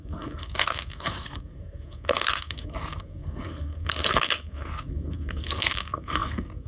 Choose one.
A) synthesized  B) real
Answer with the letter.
A